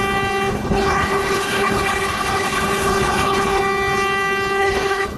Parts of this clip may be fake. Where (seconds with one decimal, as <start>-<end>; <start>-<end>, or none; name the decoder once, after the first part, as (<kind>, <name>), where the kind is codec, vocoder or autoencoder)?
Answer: 0.5-3.6 (codec, HILCodec); 4.6-5.2